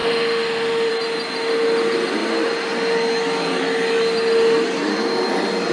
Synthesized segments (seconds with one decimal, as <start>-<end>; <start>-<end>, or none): 0.0-0.9